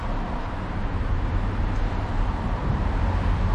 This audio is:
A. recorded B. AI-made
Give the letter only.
B